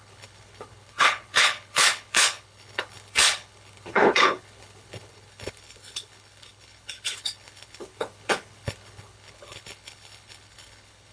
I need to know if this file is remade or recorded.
remade